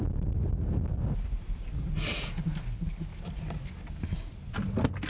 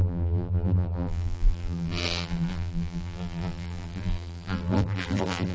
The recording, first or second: first